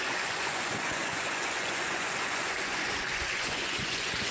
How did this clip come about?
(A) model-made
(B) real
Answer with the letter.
A